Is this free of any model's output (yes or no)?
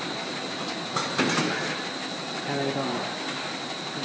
yes